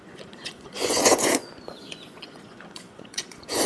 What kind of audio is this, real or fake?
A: fake